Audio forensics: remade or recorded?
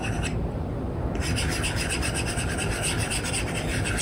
remade